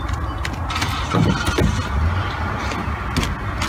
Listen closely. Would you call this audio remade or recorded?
recorded